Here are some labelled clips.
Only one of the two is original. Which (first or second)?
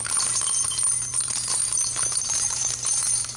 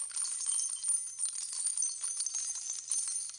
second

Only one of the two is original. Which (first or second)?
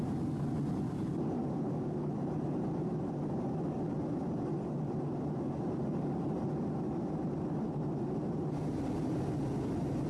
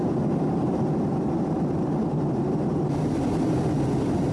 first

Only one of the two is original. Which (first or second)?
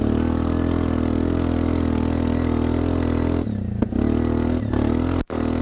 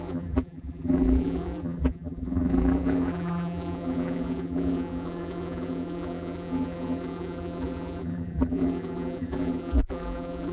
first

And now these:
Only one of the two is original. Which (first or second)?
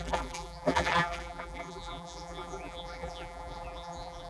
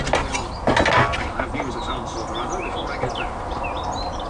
second